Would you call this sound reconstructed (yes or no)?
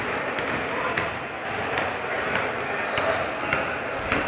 no